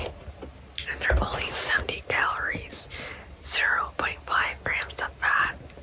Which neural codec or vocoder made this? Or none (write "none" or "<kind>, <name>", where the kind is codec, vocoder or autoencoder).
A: none